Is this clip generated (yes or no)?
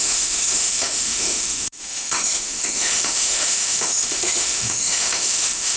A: yes